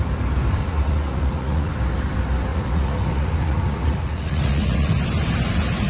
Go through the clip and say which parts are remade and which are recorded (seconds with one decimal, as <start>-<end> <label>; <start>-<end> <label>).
0.0-0.6 recorded; 0.6-1.7 remade; 1.7-2.5 recorded; 2.5-4.9 remade; 4.9-5.9 recorded